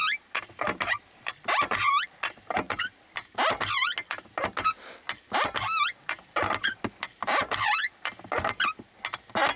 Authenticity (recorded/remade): recorded